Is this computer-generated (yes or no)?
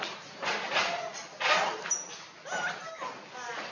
no